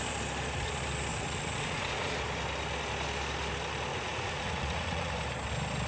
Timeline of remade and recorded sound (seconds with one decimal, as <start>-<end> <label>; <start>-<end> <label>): 0.0-1.1 recorded; 1.1-2.1 remade; 2.1-3.9 recorded; 3.9-5.1 remade; 5.1-5.9 recorded